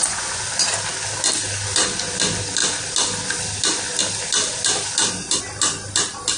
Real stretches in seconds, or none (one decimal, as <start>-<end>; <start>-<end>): 0.5-6.4